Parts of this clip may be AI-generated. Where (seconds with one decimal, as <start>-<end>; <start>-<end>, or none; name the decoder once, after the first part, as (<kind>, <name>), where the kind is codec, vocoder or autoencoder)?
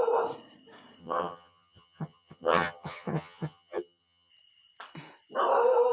1.0-4.3 (vocoder, HiFi-GAN)